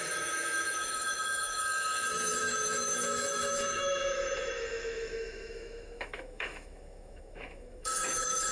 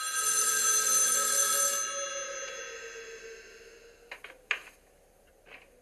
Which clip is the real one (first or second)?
second